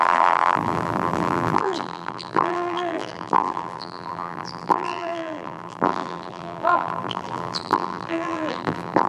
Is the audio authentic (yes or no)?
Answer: no